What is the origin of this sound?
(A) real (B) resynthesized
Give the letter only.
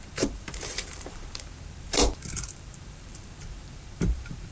B